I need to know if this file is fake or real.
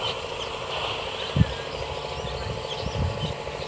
real